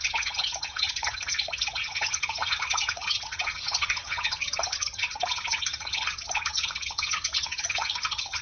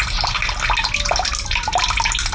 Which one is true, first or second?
second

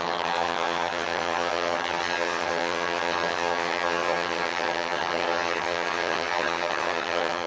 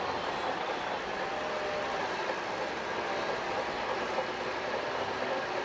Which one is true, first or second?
second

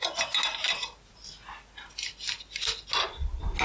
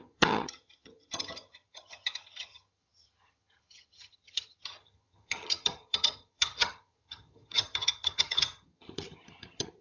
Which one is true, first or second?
first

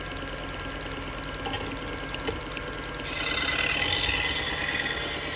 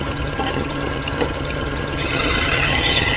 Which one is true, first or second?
first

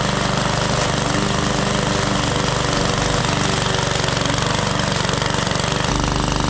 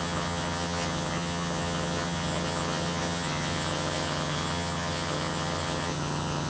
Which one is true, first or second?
first